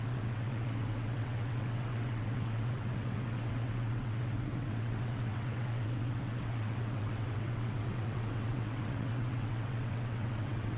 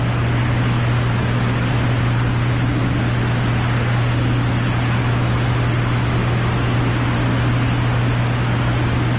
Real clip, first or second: second